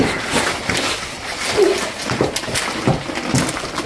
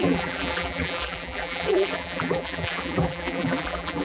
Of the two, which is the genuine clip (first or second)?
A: first